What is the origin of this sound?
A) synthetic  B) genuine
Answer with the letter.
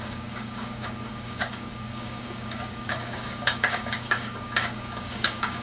A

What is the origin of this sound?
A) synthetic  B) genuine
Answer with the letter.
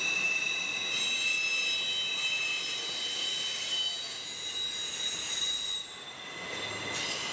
B